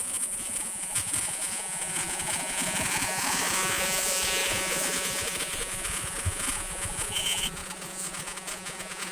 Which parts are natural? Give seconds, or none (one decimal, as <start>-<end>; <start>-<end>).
none